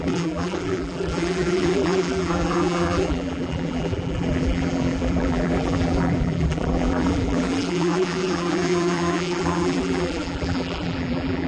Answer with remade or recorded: remade